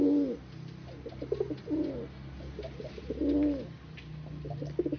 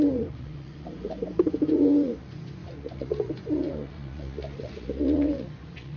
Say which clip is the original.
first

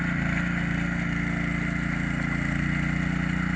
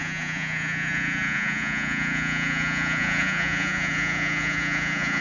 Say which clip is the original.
first